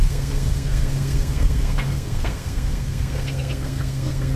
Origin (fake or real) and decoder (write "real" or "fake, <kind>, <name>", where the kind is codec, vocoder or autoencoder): fake, codec, SNAC